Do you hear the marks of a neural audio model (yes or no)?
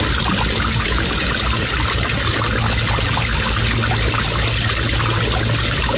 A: no